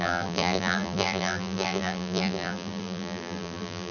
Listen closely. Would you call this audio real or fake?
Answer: fake